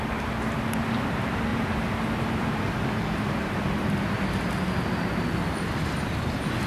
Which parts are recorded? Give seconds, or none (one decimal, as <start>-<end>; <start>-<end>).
0.0-1.5; 3.9-6.7